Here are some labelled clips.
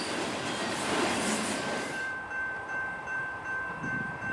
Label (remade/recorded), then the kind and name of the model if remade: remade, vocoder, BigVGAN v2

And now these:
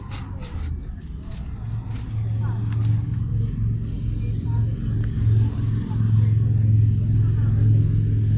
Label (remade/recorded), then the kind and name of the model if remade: recorded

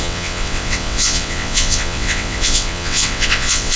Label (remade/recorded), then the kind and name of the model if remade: remade, vocoder, WaveNeXt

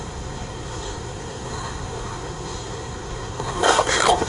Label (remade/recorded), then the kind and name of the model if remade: remade, codec, SNAC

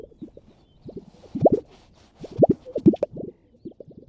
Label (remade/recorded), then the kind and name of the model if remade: recorded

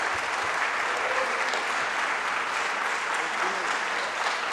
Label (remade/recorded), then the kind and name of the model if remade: recorded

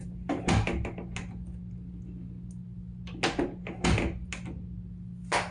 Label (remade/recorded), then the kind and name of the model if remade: recorded